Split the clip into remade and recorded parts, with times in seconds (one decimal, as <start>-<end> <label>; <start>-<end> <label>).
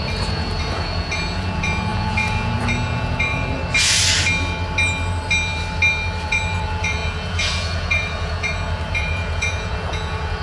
0.0-3.6 remade; 3.6-6.2 recorded; 6.2-10.4 remade